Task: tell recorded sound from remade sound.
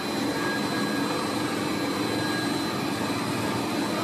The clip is recorded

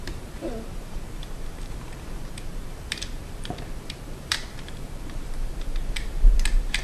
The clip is remade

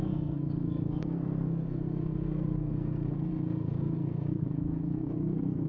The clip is remade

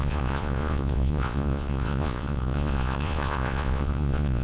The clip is remade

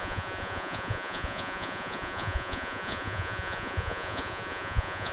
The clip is remade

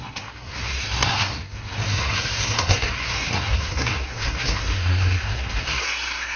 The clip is remade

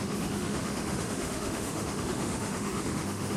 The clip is remade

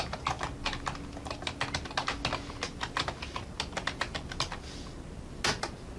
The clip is recorded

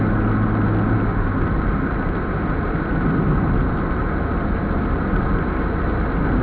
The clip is recorded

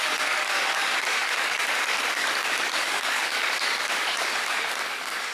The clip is remade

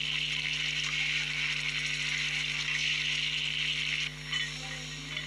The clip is recorded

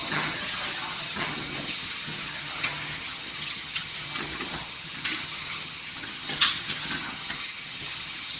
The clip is remade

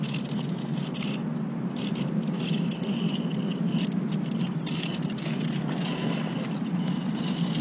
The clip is recorded